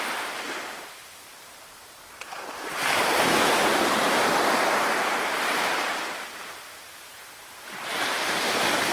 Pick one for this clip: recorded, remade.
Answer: remade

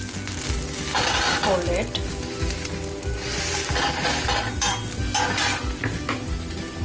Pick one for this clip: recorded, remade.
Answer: recorded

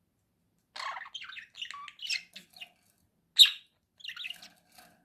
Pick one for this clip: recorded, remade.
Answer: recorded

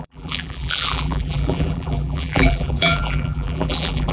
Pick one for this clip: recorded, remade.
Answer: remade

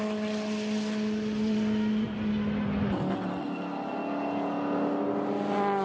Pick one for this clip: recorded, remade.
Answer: recorded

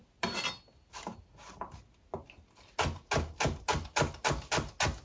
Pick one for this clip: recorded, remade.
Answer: recorded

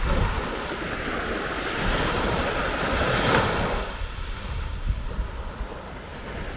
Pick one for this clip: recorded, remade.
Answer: remade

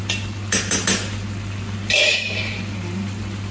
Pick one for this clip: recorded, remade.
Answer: recorded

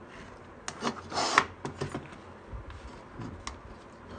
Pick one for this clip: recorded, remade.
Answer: recorded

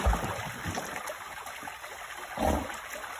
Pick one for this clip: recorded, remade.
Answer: recorded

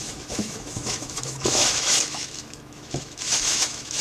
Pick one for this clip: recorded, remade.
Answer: remade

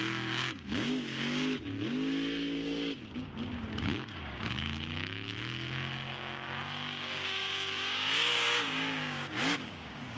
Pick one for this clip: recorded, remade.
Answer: remade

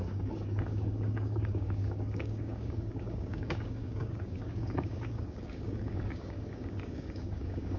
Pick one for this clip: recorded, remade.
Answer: remade